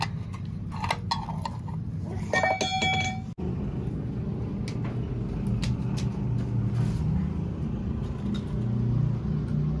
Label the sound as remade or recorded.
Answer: recorded